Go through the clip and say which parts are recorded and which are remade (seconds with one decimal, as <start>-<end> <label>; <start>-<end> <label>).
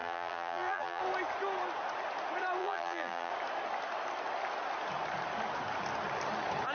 0.0-1.0 remade; 1.0-2.6 recorded; 2.6-3.3 remade; 3.3-6.7 recorded